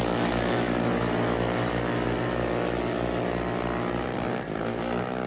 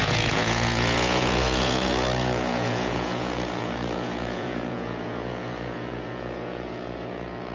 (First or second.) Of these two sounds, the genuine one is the first